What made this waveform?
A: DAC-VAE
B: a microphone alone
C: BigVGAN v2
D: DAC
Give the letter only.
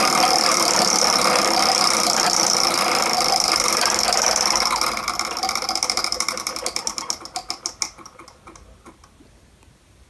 B